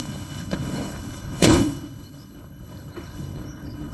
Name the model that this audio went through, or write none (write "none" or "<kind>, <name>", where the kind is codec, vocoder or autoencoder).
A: codec, HILCodec